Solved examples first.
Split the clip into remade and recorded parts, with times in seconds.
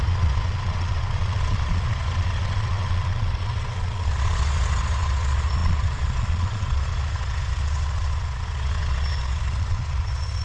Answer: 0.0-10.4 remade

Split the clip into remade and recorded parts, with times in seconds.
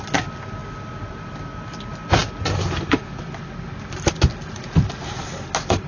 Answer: 0.0-5.9 recorded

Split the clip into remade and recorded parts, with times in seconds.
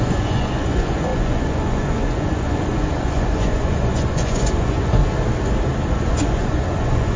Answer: 0.0-5.0 remade; 5.0-5.9 recorded; 5.9-7.2 remade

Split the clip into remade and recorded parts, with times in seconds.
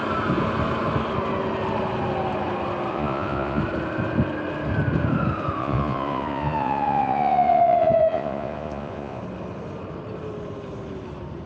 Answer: 0.0-2.9 recorded; 2.9-3.6 remade; 3.6-5.6 recorded; 5.6-9.2 remade; 9.2-11.5 recorded